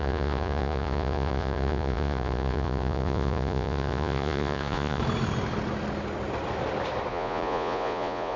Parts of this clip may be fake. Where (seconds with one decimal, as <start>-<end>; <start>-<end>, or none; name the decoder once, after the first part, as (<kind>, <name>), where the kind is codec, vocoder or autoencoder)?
0.0-5.0 (vocoder, Vocos); 7.1-8.4